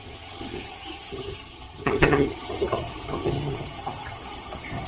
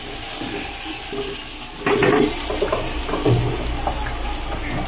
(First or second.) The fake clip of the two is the first